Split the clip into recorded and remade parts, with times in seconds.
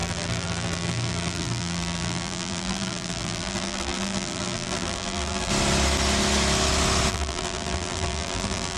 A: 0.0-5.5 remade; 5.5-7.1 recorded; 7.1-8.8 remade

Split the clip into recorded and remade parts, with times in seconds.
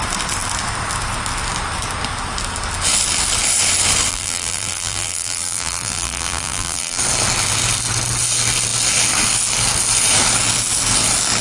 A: 0.0-4.1 recorded; 4.1-7.0 remade; 7.0-11.4 recorded